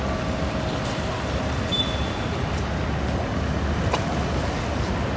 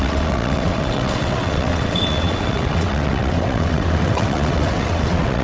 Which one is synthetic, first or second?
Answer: second